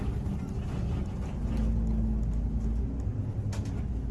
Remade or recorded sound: recorded